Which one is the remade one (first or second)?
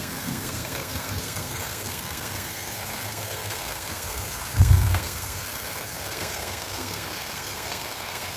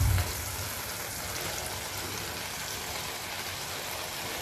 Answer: first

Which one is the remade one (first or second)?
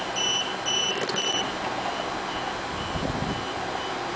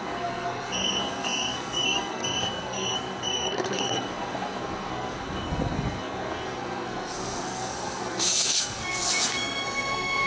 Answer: second